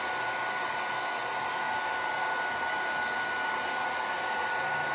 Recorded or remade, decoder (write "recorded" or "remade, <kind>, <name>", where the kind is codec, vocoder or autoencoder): recorded